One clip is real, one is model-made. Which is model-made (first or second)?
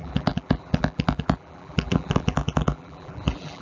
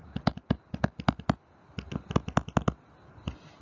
first